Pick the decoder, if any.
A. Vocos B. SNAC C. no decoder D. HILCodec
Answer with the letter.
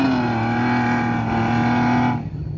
C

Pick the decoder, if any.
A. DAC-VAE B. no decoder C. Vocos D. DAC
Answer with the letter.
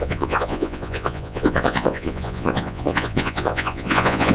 C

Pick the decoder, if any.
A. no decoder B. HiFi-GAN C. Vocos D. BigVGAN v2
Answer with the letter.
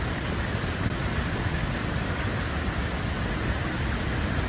A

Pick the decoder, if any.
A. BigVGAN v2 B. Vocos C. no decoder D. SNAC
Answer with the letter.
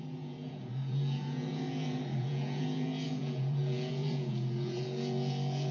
B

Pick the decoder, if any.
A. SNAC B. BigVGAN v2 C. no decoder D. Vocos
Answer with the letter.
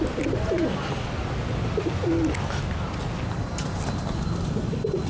C